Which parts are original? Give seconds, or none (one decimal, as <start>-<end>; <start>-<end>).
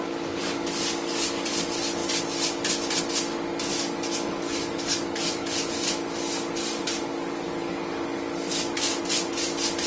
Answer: 0.0-0.4; 1.5-3.7; 9.0-9.9